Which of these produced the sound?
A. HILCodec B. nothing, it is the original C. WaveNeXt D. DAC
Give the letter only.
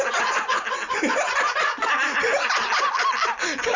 B